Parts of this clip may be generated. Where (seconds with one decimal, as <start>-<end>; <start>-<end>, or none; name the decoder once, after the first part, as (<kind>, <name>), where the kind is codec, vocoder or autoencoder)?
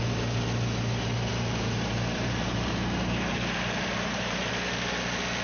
1.3-4.5 (vocoder, BigVGAN v2)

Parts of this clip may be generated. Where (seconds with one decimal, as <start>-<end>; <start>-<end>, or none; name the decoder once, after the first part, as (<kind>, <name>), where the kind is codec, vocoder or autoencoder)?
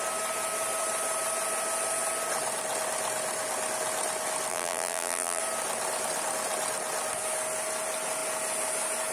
4.5-5.4 (vocoder, BigVGAN v2)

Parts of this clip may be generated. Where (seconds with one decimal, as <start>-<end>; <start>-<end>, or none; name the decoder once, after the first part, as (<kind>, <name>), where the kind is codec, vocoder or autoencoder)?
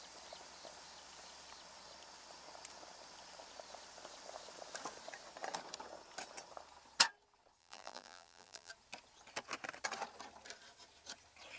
7.6-8.7 (vocoder, BigVGAN v2)